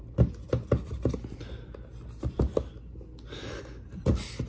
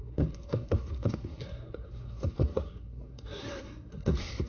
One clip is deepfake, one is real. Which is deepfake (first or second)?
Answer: second